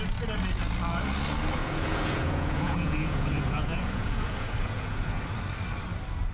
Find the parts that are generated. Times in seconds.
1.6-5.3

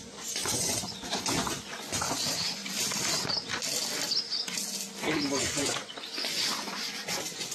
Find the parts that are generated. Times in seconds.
0.0-2.6; 5.4-7.5